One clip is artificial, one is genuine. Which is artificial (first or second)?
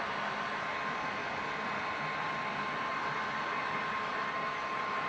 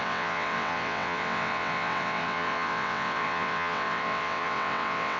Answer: second